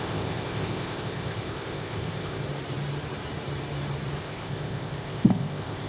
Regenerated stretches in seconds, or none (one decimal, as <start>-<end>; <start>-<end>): 0.0-2.4; 4.2-5.9